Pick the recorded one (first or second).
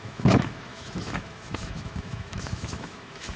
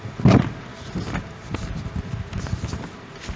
second